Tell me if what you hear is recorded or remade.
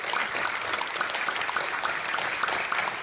recorded